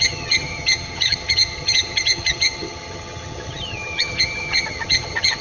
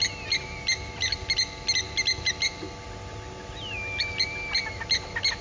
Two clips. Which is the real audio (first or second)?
second